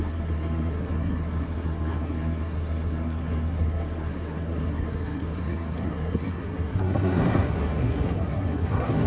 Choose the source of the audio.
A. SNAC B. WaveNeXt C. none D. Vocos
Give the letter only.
A